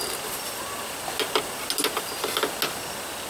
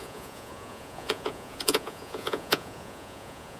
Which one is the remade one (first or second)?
second